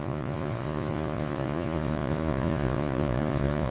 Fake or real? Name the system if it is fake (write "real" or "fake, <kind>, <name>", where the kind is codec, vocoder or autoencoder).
fake, vocoder, Vocos